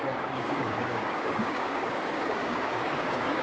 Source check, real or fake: fake